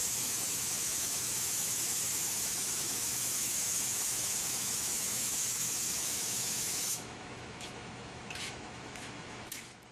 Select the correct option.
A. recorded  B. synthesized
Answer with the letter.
B